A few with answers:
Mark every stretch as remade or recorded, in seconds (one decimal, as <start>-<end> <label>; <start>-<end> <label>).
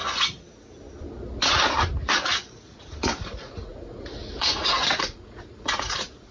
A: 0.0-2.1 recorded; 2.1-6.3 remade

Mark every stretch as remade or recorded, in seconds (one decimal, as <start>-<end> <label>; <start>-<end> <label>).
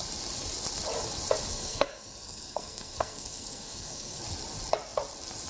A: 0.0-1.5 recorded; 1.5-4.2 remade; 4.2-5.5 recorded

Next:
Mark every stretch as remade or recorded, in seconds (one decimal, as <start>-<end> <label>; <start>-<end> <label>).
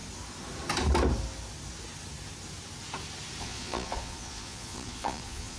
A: 0.0-3.4 recorded; 3.4-5.6 remade